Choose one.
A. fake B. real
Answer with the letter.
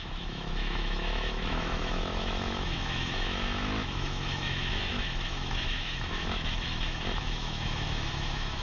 A